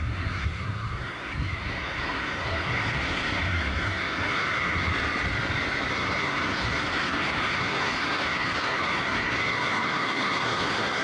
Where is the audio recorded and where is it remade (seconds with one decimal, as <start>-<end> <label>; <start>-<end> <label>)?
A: 0.0-4.9 remade; 4.9-5.9 recorded; 5.9-11.0 remade